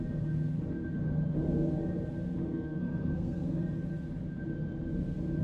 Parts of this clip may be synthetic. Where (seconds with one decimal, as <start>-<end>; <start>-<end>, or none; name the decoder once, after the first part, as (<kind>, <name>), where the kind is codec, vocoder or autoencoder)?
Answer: 2.4-3.6 (codec, SNAC)